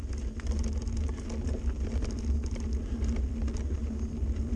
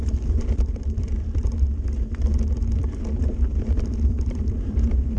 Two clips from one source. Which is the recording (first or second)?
first